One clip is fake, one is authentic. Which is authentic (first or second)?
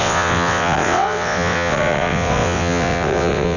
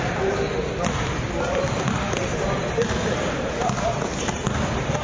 second